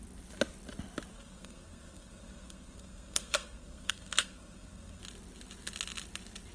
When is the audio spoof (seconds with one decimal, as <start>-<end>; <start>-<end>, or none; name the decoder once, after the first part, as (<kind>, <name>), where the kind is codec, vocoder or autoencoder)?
1.1-5.0 (codec, SNAC)

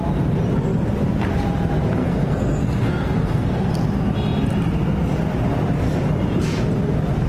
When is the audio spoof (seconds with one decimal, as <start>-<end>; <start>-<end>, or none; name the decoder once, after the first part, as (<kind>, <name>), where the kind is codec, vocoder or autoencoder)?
2.0-3.7 (codec, SNAC)

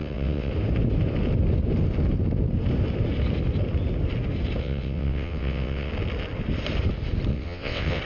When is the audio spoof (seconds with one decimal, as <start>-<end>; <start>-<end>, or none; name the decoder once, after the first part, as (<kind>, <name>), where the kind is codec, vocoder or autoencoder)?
0.0-0.5 (vocoder, WaveNeXt); 4.6-5.9; 7.3-8.0

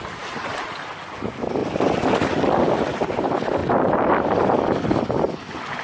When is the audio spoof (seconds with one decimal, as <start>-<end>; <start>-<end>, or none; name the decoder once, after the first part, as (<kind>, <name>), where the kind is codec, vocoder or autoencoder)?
none

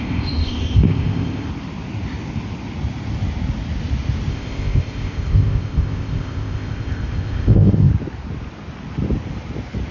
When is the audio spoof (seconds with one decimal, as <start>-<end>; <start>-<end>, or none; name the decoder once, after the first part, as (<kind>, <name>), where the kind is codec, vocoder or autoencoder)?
0.0-1.5 (codec, ZipCodec); 4.3-7.9

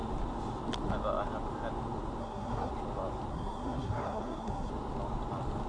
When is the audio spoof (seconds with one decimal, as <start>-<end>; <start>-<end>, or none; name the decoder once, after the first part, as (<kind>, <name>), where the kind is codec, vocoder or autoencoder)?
2.2-2.7 (codec, SNAC); 3.3-4.7

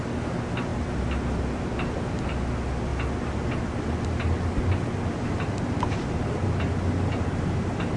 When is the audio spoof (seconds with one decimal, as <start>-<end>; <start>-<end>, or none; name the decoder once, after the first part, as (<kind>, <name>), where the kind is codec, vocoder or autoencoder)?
none